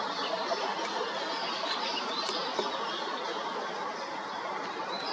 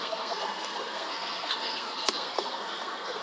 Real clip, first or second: first